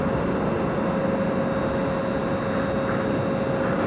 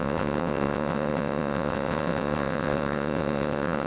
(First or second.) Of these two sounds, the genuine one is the first